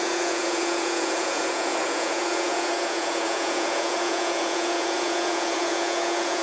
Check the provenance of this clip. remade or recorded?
remade